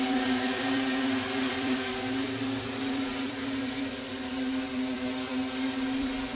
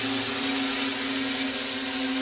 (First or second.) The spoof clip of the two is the first